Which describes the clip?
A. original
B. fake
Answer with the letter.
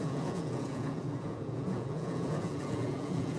B